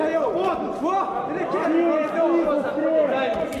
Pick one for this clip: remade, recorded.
recorded